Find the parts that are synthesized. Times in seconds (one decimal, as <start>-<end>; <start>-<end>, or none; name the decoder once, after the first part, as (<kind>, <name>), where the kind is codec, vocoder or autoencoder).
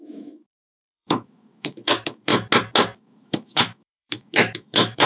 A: 0.0-2.3 (autoencoder, DAC-VAE); 3.0-5.1